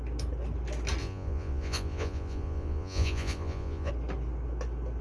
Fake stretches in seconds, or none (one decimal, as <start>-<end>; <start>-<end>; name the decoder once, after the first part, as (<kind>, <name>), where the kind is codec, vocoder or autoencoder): 1.0-3.9 (vocoder, Vocos)